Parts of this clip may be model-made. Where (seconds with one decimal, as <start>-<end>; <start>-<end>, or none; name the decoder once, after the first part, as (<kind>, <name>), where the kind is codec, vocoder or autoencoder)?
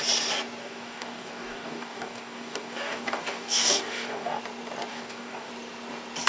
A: 0.6-4.4 (codec, DAC); 4.9-5.5